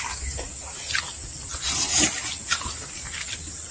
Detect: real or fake real